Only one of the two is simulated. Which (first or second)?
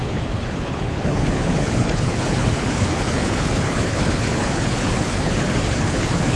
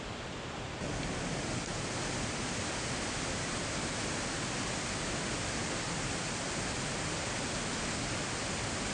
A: first